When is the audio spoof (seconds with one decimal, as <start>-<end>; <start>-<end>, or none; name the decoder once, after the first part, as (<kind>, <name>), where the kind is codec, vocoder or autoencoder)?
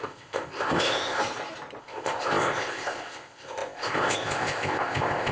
0.0-1.2 (codec, ZipCodec); 1.8-5.3